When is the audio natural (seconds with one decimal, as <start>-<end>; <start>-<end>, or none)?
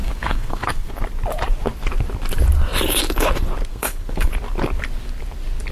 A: 0.9-3.7; 4.3-5.7